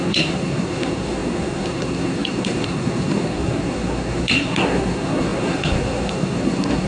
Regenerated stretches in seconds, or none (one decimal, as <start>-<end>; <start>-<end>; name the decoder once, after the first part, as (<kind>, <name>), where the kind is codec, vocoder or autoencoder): 0.0-6.9 (codec, SNAC)